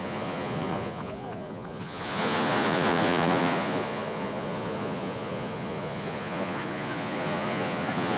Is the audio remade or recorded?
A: remade